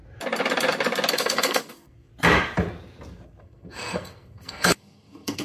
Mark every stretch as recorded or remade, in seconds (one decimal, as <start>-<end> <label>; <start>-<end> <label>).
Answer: 0.0-1.1 recorded; 1.1-2.1 remade; 2.1-3.4 recorded; 3.4-5.4 remade